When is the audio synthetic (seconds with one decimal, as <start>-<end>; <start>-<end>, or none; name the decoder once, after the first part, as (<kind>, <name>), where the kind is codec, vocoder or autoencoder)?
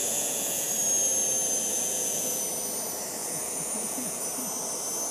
0.0-0.7 (vocoder, Vocos); 1.7-2.4; 3.2-4.2